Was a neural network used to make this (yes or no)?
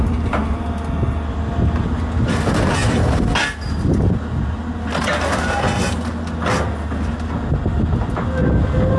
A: no